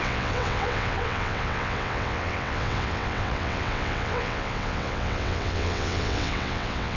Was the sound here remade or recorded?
remade